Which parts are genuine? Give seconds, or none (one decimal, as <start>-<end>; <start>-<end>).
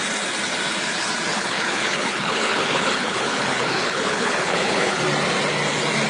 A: 0.0-1.3; 5.0-6.1